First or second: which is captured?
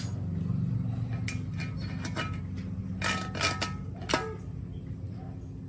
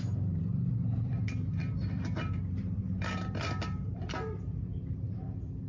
first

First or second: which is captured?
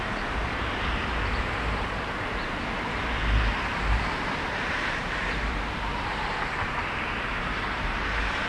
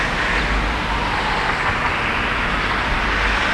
second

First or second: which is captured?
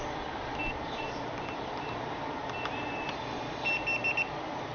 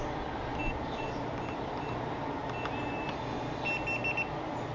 second